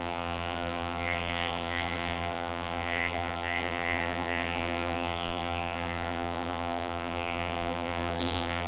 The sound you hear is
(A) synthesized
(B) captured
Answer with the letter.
A